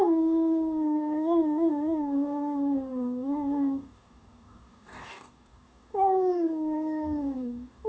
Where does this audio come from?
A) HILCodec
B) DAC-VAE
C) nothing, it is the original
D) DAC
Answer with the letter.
D